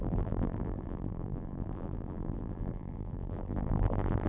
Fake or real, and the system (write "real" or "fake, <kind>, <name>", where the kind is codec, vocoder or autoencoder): fake, vocoder, BigVGAN v2